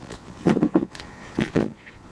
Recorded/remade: remade